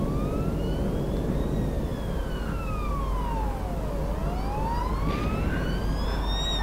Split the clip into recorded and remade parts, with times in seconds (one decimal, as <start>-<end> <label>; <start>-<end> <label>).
0.0-6.6 recorded